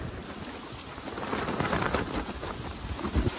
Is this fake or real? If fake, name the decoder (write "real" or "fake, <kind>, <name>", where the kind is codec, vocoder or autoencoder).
real